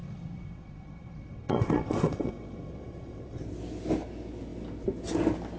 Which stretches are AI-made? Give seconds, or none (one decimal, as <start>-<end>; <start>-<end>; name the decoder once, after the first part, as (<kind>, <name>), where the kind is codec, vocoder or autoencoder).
0.0-3.4 (vocoder, Vocos)